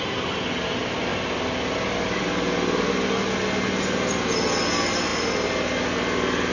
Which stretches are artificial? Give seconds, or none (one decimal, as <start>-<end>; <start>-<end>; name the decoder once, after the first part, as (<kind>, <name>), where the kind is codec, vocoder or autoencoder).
none